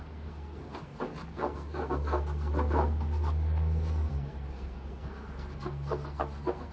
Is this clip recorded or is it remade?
remade